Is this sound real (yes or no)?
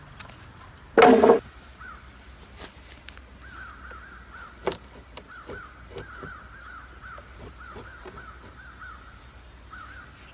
yes